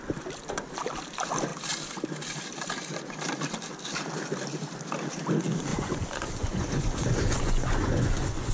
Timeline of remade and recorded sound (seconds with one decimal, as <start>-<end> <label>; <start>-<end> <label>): 0.0-5.7 recorded; 5.7-8.5 remade